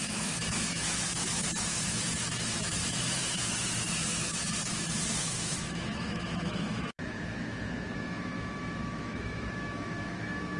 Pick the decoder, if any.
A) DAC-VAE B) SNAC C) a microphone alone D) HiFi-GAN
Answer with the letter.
A